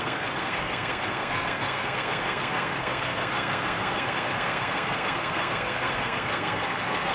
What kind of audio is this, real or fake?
fake